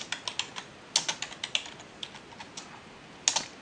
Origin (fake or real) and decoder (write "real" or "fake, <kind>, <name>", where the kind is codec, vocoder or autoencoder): real